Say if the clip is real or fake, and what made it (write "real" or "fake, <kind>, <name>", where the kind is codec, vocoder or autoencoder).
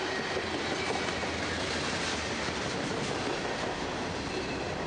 real